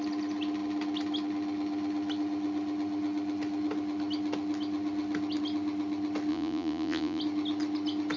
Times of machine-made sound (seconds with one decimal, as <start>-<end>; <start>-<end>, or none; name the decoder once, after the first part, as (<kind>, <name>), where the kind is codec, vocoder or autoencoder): 6.3-7.2 (vocoder, Vocos)